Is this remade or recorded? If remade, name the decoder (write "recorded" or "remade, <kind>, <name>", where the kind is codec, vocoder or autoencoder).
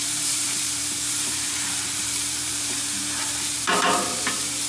remade, vocoder, BigVGAN v2